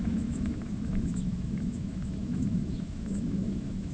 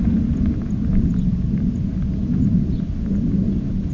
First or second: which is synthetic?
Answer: first